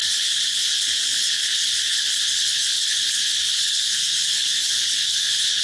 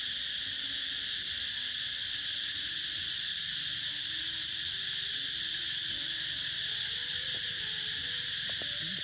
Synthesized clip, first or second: first